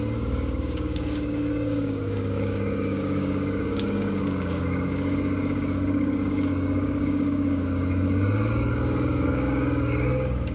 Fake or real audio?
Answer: fake